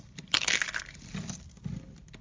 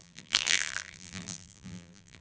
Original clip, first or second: first